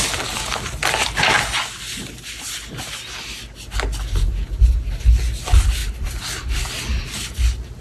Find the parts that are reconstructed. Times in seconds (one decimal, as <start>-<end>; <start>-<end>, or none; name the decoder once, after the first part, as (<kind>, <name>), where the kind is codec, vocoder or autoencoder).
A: none